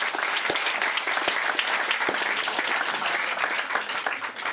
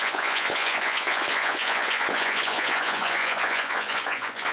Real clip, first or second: first